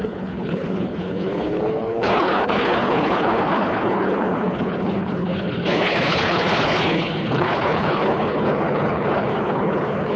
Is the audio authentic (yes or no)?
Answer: no